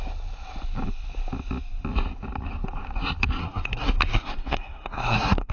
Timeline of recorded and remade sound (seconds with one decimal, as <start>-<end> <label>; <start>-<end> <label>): 0.0-3.4 recorded; 3.4-5.5 remade